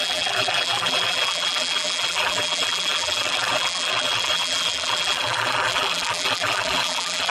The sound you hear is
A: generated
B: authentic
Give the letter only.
A